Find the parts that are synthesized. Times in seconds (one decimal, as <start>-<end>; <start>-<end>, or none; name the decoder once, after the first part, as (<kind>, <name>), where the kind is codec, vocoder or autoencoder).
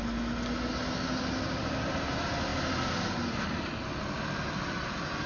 none